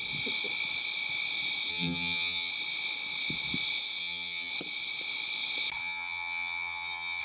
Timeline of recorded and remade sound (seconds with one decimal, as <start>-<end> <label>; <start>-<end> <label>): 0.0-1.7 recorded; 1.7-2.5 remade; 2.5-4.0 recorded; 4.0-4.5 remade; 4.5-5.8 recorded; 5.8-7.2 remade